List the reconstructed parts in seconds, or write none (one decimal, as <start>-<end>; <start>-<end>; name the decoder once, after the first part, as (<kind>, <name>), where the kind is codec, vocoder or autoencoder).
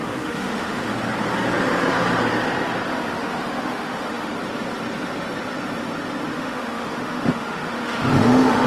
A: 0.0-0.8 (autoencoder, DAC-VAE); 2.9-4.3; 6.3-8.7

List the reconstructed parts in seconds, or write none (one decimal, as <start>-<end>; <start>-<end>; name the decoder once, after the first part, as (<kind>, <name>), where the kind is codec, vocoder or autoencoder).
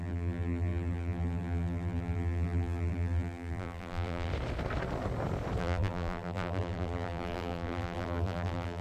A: 0.0-4.3 (vocoder, BigVGAN v2); 5.6-8.8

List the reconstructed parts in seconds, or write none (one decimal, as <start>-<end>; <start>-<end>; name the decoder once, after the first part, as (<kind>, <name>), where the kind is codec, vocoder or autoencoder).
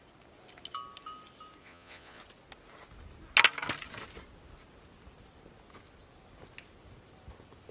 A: 1.6-2.2 (vocoder, Vocos)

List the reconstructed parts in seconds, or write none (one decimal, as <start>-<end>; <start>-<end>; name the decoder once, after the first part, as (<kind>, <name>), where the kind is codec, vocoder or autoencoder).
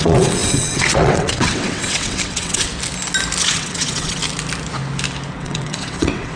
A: 0.0-2.7 (vocoder, WaveNeXt); 3.4-4.2; 5.4-6.4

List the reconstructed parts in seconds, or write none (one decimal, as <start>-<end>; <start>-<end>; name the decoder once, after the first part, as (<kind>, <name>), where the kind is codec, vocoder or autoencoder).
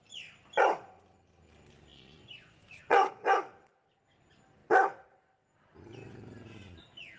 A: 1.9-3.1 (vocoder, Vocos)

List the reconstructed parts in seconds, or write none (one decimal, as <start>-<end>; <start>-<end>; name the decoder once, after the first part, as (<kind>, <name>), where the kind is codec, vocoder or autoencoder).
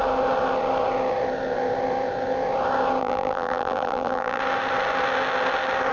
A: 3.0-4.4 (vocoder, BigVGAN v2)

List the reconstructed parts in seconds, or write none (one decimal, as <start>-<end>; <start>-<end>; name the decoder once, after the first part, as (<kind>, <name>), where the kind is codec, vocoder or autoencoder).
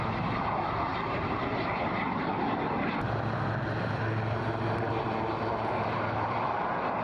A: 0.9-5.1 (vocoder, BigVGAN v2)